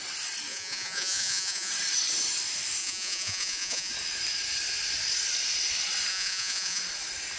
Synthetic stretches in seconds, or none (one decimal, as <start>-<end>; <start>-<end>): 0.5-1.7; 2.8-3.9; 6.1-6.8